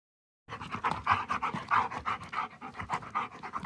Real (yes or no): yes